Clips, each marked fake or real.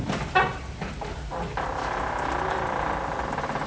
fake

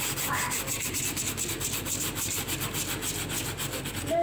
real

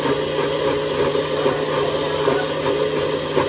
real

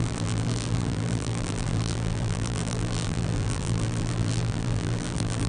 fake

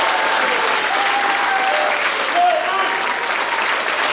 fake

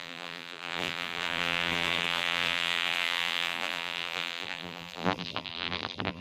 fake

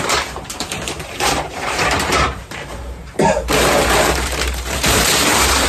fake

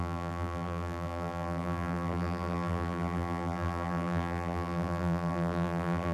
fake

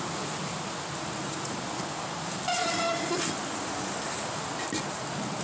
real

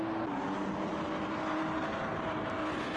real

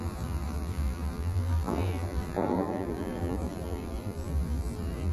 fake